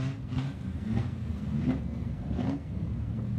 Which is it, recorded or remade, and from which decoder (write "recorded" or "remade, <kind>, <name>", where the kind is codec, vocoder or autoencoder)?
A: remade, codec, SNAC